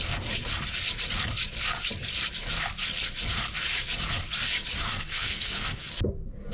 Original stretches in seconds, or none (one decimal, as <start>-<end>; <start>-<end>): 0.0-4.9; 5.9-6.5